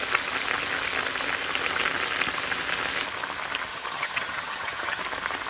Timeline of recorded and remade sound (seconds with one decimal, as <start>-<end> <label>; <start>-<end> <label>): 0.0-3.7 recorded; 3.7-5.0 remade; 5.0-5.5 recorded